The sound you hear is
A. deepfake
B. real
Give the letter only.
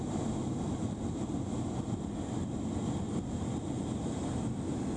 B